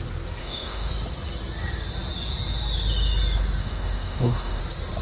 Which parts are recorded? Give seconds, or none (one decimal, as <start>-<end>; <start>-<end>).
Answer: 0.0-0.4; 0.9-3.6; 4.6-5.0